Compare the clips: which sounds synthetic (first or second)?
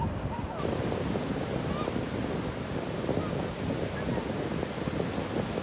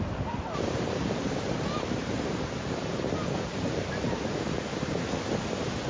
second